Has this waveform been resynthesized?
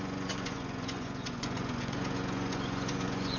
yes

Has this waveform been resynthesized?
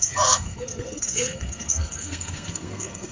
yes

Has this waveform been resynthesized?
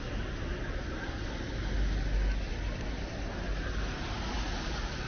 no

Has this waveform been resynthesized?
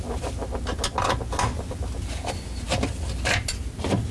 no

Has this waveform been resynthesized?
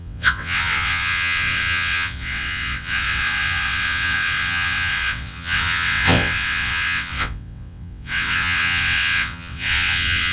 yes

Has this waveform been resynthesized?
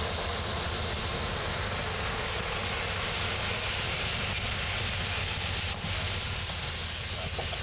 no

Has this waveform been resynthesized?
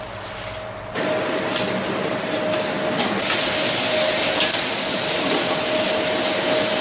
no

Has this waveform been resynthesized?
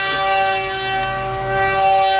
no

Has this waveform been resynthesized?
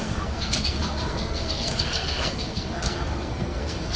yes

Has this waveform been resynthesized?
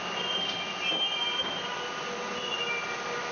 no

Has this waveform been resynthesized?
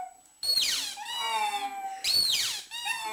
no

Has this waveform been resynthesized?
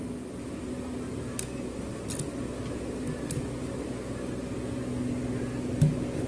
no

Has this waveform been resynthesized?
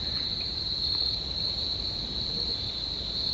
no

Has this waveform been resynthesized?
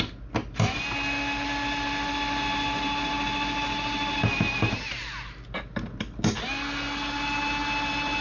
no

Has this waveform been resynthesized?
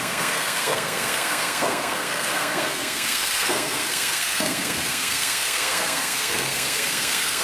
yes